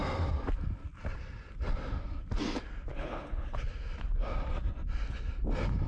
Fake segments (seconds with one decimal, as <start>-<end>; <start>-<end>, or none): 2.9-3.7